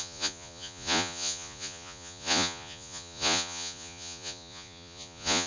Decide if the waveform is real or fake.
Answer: fake